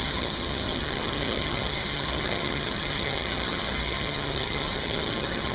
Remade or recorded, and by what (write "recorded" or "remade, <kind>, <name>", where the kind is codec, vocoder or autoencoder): remade, vocoder, HiFi-GAN